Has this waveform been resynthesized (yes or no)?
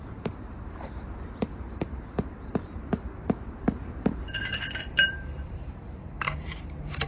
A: yes